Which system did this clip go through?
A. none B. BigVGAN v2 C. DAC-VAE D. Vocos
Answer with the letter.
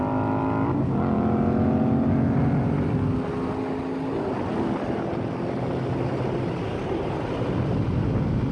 A